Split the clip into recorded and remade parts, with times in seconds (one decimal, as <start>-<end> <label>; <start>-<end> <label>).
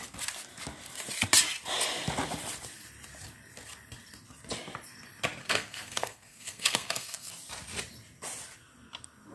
0.0-5.4 recorded; 5.4-7.3 remade; 7.3-9.3 recorded